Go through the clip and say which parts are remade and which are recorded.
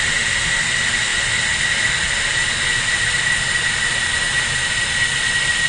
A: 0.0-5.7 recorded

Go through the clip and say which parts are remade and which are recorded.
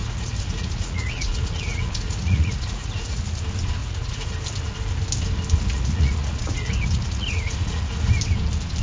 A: 0.0-3.2 remade; 3.2-3.8 recorded; 3.8-4.3 remade; 4.3-5.7 recorded; 5.7-8.0 remade; 8.0-8.8 recorded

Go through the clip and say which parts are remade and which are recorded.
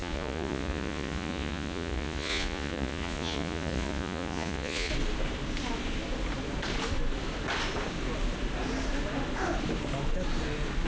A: 0.0-4.9 remade; 4.9-10.9 recorded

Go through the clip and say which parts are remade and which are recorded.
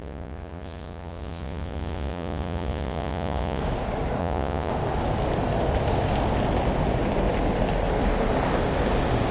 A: 0.0-3.6 remade; 3.6-4.2 recorded; 4.2-4.7 remade; 4.7-9.3 recorded